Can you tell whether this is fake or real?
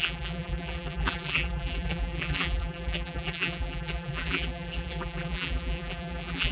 fake